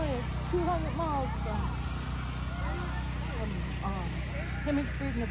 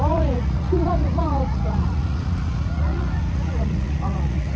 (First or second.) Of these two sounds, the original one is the first